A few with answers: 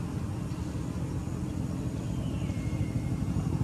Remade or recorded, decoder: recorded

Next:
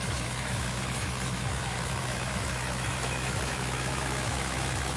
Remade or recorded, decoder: remade, autoencoder, DAC-VAE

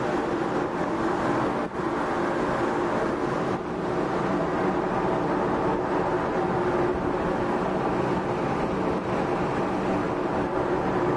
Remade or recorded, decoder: recorded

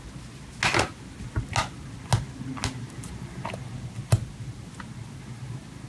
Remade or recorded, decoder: recorded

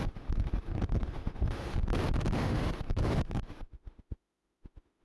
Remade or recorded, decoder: remade, autoencoder, DAC-VAE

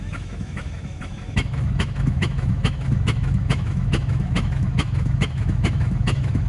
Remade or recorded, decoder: remade, autoencoder, DAC-VAE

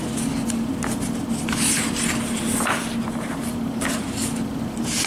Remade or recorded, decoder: recorded